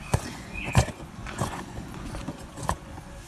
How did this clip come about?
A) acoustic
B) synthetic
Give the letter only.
B